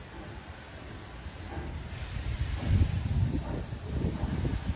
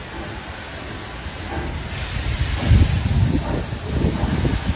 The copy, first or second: first